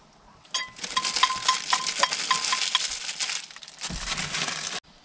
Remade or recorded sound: recorded